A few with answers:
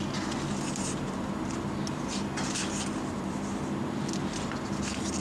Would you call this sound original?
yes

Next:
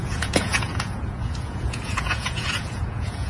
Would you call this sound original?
no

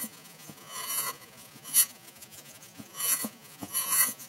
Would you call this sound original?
no